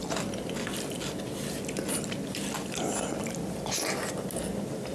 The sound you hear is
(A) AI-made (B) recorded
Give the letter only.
B